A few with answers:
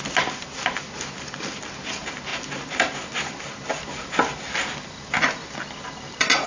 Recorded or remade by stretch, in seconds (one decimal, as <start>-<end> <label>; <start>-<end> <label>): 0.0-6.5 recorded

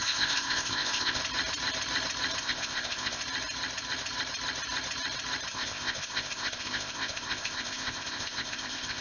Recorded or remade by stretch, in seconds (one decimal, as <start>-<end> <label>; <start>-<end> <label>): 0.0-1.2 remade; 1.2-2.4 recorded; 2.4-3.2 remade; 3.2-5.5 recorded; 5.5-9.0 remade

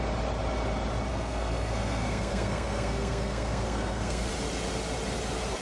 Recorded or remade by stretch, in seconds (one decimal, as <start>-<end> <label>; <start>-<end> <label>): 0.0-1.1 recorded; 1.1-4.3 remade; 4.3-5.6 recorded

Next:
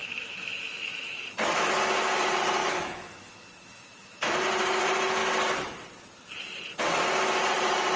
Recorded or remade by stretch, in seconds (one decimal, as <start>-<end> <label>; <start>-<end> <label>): 0.0-1.7 remade; 1.7-2.6 recorded; 2.6-4.4 remade; 4.4-8.0 recorded